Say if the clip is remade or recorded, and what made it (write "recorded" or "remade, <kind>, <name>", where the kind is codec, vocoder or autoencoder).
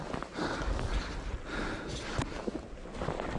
recorded